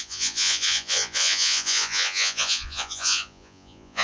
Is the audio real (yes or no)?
no